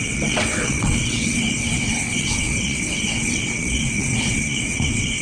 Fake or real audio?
fake